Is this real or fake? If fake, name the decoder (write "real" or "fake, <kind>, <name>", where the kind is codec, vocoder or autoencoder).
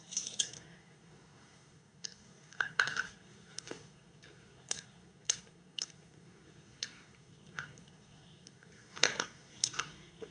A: fake, codec, SNAC